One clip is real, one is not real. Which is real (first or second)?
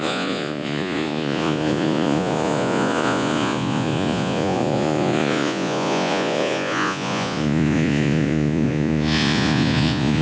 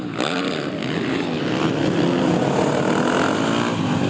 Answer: second